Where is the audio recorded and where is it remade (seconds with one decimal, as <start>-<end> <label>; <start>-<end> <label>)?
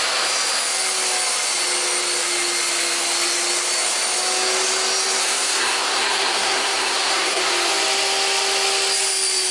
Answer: 0.0-5.2 recorded; 5.2-7.4 remade; 7.4-9.5 recorded